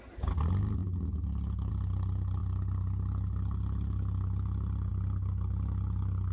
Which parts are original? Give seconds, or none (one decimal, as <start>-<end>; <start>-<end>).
0.0-6.3